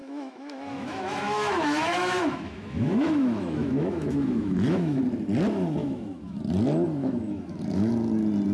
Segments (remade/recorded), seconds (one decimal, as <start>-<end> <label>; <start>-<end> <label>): 0.0-5.0 remade; 5.0-5.8 recorded; 5.8-6.4 remade; 6.4-7.0 recorded; 7.0-7.9 remade; 7.9-8.5 recorded